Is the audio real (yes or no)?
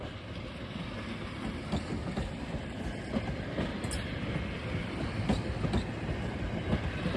yes